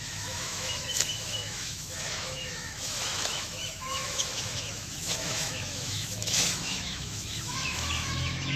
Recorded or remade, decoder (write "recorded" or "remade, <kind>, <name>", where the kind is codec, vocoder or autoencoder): remade, autoencoder, DAC-VAE